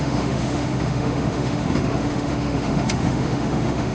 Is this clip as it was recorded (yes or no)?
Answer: no